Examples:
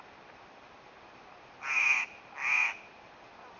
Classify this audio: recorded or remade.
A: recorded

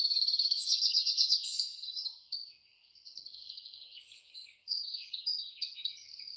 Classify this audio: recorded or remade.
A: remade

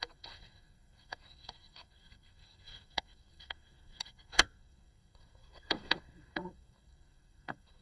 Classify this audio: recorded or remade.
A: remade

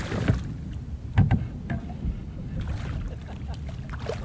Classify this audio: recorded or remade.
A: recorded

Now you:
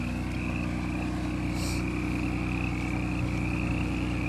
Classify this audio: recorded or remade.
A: recorded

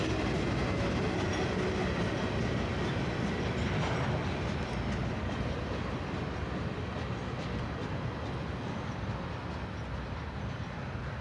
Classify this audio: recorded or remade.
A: recorded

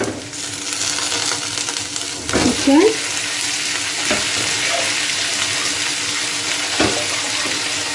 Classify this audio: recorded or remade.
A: recorded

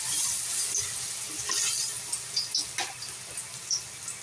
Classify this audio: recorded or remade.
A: recorded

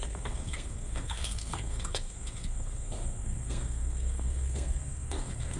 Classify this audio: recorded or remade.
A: remade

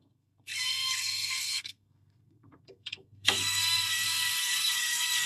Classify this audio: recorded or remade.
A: remade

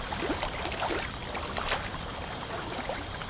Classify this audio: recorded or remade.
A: recorded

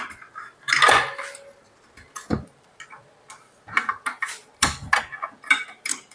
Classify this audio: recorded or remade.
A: recorded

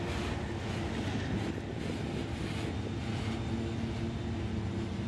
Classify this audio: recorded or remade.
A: recorded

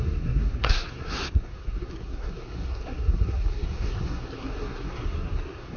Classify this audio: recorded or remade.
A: remade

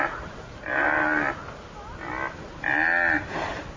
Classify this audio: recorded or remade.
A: recorded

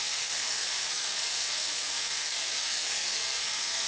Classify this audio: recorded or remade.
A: remade